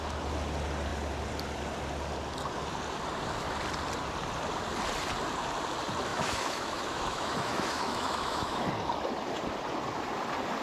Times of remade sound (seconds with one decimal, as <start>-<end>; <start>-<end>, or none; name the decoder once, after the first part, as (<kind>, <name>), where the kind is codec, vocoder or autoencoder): 6.1-8.7 (autoencoder, DAC-VAE)